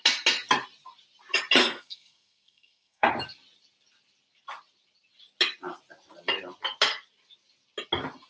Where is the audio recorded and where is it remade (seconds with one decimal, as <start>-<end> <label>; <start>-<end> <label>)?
0.0-1.6 recorded; 1.6-3.1 remade; 3.1-8.3 recorded